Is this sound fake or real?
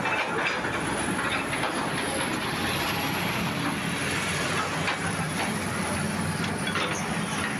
real